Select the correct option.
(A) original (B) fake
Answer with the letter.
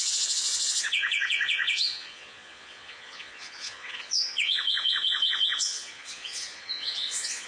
B